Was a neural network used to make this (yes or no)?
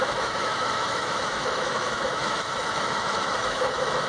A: yes